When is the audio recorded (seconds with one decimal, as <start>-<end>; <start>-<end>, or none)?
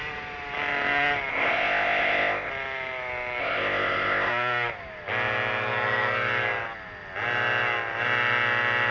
0.0-1.3; 2.5-3.4; 4.3-8.9